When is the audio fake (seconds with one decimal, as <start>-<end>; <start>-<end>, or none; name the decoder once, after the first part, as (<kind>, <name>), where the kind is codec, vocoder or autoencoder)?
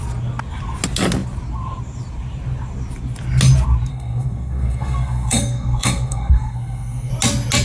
3.9-7.1 (codec, SNAC)